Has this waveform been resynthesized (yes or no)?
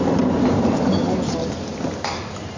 no